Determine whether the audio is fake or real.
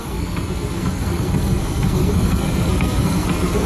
fake